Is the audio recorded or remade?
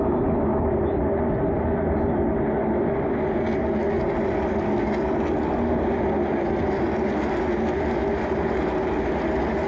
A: recorded